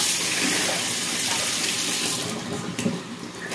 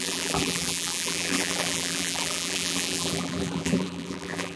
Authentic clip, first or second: first